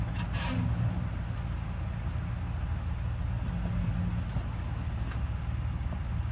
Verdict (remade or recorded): recorded